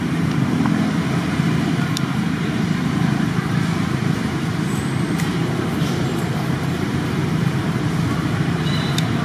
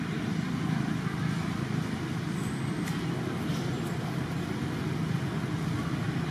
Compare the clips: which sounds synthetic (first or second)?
first